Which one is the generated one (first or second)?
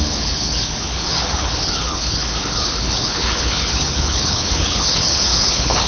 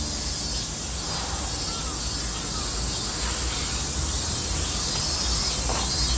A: first